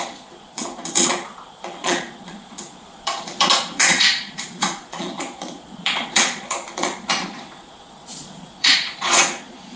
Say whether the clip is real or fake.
fake